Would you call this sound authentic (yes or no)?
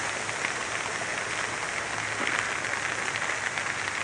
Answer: yes